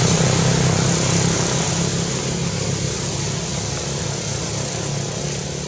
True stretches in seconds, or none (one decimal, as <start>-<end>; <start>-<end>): 0.0-5.7